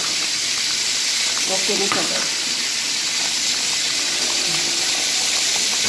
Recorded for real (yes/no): no